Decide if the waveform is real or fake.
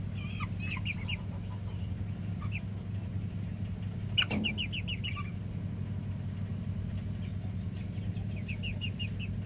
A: real